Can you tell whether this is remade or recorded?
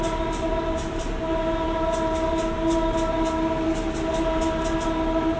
recorded